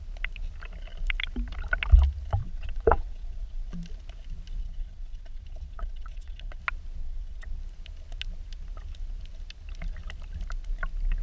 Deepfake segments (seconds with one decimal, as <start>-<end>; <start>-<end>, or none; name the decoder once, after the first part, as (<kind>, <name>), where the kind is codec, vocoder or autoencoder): 2.4-3.7 (vocoder, WaveNeXt); 4.6-6.6; 7.0-7.6

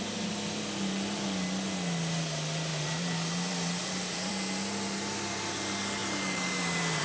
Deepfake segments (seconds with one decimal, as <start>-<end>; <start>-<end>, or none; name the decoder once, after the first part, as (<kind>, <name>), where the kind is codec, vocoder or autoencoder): 2.7-4.3 (vocoder, BigVGAN v2); 6.0-7.0

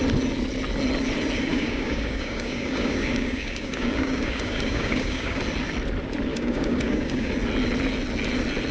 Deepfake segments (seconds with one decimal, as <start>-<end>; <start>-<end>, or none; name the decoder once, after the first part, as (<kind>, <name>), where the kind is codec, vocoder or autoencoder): 1.5-5.4 (codec, DAC); 6.3-7.3

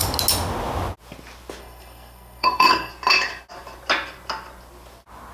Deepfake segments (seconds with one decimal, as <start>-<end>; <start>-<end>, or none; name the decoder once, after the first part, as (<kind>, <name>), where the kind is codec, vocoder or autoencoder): 1.6-2.9 (codec, SNAC)

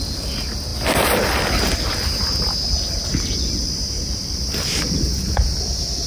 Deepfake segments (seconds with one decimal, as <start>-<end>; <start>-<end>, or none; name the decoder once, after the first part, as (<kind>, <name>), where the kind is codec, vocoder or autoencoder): none

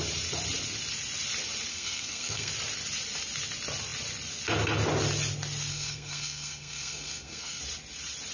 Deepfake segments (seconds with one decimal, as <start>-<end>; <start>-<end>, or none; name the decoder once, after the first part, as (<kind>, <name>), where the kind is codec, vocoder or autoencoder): 1.7-2.5 (codec, SNAC); 5.7-7.6